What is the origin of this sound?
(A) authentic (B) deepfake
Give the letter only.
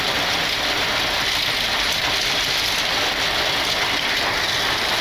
A